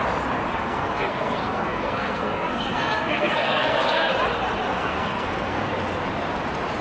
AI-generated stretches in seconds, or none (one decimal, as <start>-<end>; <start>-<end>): 0.5-4.1; 4.7-5.7